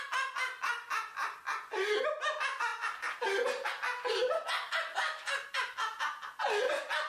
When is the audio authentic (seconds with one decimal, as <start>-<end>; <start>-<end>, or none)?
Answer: 0.0-7.1